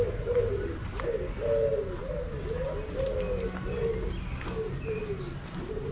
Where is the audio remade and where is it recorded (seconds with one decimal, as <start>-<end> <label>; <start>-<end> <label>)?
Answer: 0.0-5.9 recorded